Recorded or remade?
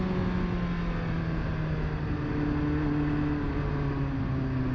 recorded